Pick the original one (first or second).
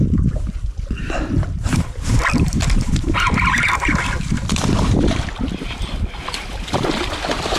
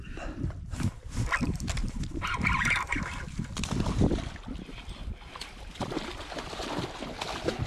second